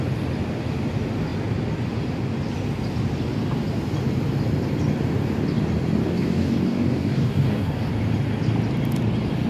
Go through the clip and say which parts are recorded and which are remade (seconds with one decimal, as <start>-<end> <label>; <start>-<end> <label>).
0.0-6.0 recorded; 6.0-7.9 remade; 7.9-9.5 recorded